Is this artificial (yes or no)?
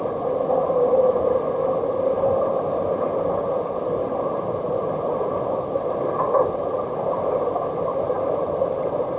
no